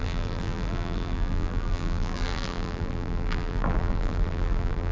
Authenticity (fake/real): fake